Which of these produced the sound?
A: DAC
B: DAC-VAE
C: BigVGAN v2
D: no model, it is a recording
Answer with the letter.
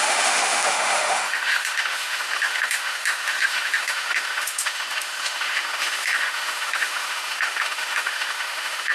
B